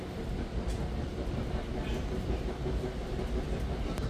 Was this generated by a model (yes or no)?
no